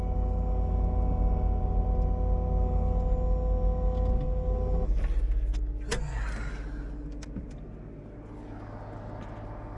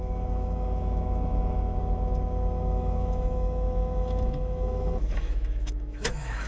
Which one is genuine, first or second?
first